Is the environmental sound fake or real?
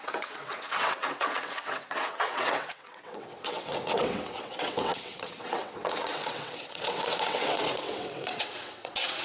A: fake